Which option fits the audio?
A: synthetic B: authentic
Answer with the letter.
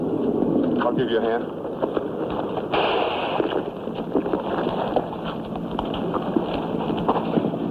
B